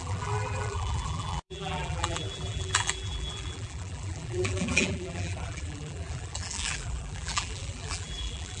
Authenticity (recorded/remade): remade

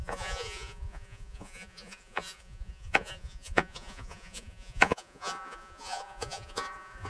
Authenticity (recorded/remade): remade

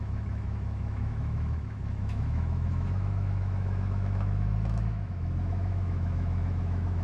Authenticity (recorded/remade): remade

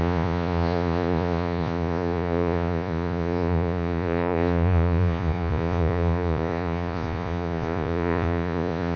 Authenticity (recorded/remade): remade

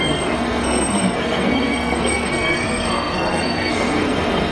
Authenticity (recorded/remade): remade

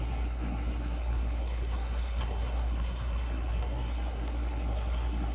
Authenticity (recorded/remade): remade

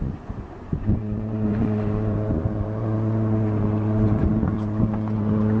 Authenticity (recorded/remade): remade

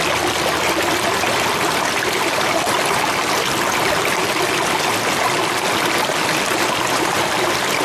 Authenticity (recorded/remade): recorded